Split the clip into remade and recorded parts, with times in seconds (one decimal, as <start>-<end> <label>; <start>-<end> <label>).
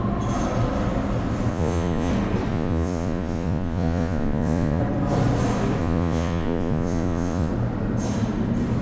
0.0-1.5 recorded; 1.5-2.1 remade; 2.1-2.5 recorded; 2.5-4.8 remade; 4.8-5.8 recorded; 5.8-7.5 remade; 7.5-8.8 recorded